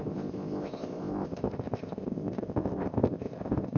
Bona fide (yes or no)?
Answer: no